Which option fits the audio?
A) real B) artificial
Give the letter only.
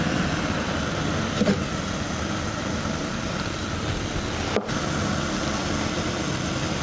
A